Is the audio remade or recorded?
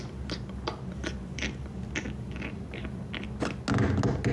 recorded